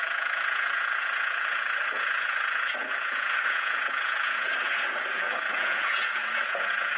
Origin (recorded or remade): remade